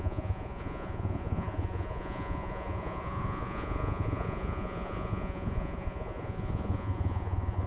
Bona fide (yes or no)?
no